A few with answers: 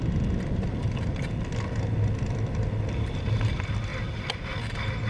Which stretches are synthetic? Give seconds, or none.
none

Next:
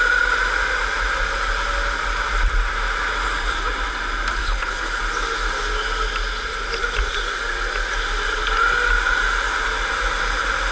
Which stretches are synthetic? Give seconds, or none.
4.4-5.0

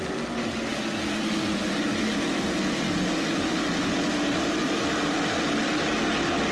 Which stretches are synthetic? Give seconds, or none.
none